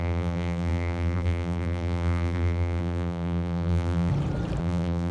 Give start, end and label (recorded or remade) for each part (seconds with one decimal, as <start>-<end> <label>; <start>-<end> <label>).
0.0-4.1 remade; 4.1-4.6 recorded; 4.6-5.1 remade